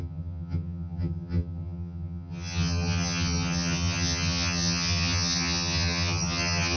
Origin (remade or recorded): remade